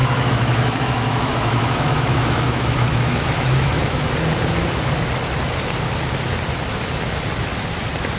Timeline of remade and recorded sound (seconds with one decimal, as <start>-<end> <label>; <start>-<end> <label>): 0.0-4.1 remade; 4.1-8.2 recorded